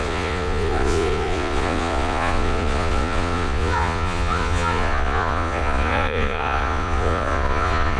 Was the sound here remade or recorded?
remade